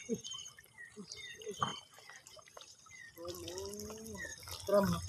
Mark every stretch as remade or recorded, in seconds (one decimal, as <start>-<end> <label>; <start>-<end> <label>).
0.0-0.7 remade; 0.7-1.7 recorded; 1.7-2.8 remade; 2.8-5.1 recorded